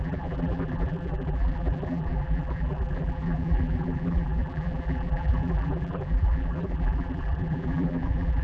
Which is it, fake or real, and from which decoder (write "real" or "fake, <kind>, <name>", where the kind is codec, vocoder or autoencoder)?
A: fake, vocoder, BigVGAN v2